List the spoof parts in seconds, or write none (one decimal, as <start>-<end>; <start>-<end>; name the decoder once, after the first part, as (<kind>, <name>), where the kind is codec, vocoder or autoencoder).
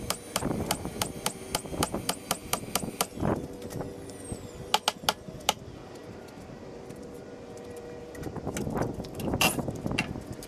none